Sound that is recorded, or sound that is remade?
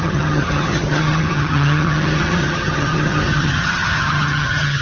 remade